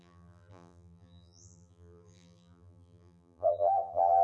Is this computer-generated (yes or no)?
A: yes